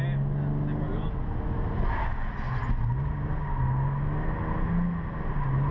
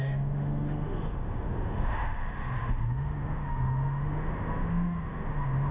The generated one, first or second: second